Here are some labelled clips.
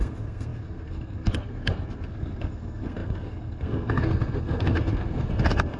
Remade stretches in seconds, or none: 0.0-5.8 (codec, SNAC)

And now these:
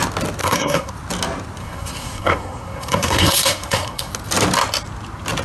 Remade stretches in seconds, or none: 0.4-0.9 (codec, SNAC); 1.6-4.1

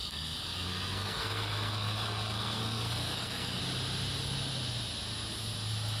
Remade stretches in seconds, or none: 0.0-3.6 (codec, SNAC)

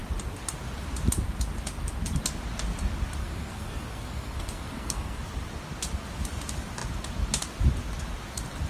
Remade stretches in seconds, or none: 3.2-5.2 (codec, SNAC)